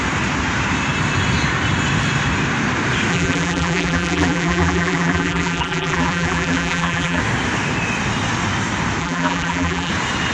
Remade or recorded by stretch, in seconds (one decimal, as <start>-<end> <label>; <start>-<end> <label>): 0.0-3.1 recorded; 3.1-7.2 remade; 7.2-9.0 recorded; 9.0-9.9 remade; 9.9-10.3 recorded